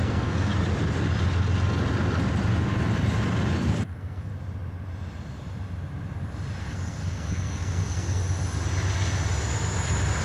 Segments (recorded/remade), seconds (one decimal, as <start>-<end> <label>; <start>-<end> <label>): 0.0-0.5 remade; 0.5-3.7 recorded; 3.7-4.3 remade; 4.3-6.6 recorded; 6.6-8.2 remade; 8.2-10.2 recorded

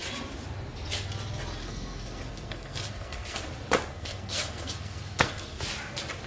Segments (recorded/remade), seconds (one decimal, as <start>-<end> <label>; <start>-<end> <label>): 0.0-1.6 recorded; 1.6-3.5 remade; 3.5-3.9 recorded; 3.9-5.6 remade; 5.6-6.3 recorded

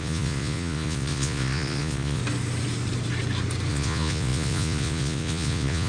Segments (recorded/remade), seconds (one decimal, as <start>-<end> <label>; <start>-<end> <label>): 0.0-2.2 remade; 2.2-3.7 recorded; 3.7-5.9 remade